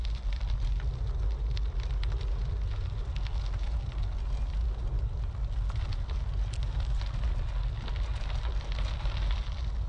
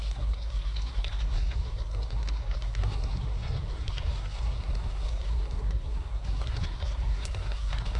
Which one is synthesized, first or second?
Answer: second